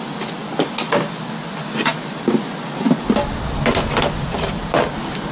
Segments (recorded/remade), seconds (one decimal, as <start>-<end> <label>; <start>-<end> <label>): 0.0-5.3 recorded